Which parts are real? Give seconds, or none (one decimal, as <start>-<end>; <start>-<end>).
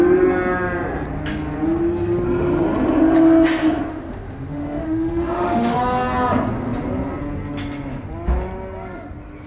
0.0-3.9; 5.8-9.5